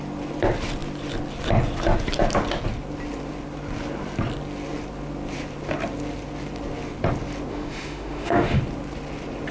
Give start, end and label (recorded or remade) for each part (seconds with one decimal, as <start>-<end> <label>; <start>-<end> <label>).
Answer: 0.0-7.5 recorded; 7.5-8.6 remade; 8.6-9.5 recorded